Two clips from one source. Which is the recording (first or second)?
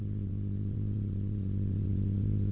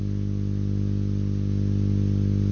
second